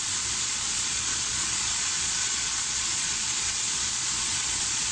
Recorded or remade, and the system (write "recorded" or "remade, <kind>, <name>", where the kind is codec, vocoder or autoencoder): remade, vocoder, Vocos